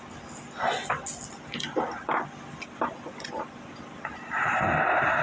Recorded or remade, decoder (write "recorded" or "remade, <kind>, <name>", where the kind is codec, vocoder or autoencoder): recorded